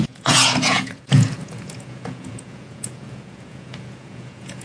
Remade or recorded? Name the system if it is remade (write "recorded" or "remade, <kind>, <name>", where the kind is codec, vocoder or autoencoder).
remade, vocoder, Vocos